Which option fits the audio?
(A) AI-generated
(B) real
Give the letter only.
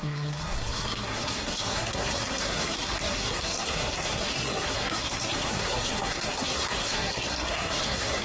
A